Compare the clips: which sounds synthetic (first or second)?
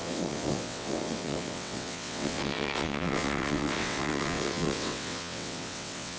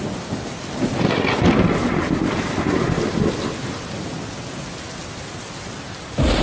first